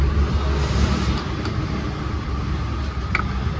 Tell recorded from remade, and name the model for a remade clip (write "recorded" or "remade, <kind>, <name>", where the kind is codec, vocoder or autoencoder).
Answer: recorded